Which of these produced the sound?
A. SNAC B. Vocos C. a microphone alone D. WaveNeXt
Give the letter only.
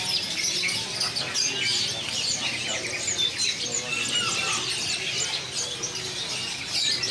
C